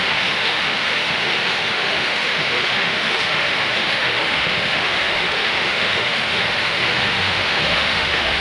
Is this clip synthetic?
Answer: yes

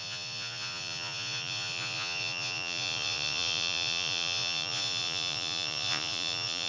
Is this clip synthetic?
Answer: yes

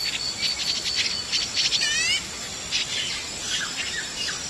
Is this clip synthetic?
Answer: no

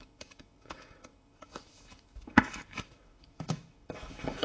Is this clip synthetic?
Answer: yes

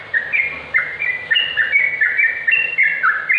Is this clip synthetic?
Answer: no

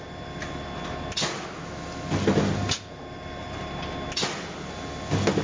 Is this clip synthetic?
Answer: no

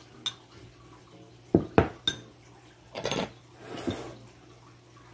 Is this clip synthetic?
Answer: no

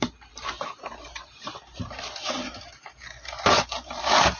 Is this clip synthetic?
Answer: yes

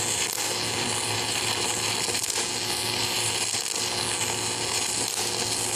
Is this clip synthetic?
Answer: no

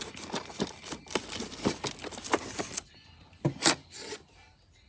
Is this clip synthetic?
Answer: yes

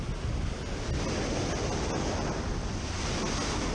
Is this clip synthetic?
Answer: no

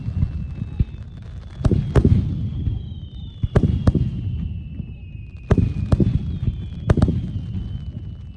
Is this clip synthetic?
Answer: no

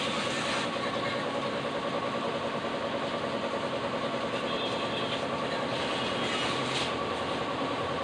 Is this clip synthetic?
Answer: no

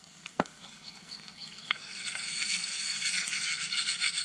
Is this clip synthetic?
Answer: yes